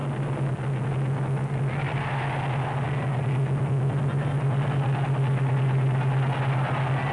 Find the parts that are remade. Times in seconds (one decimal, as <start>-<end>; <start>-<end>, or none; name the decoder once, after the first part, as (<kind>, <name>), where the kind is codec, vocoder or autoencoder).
none